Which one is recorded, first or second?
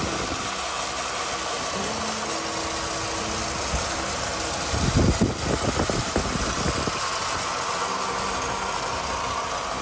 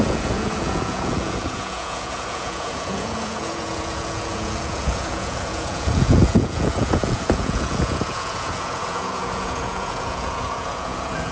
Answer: first